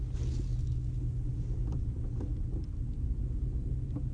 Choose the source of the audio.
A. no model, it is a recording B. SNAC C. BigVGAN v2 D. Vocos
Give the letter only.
A